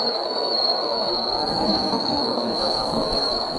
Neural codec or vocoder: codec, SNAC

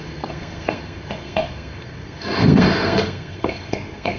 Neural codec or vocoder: codec, SNAC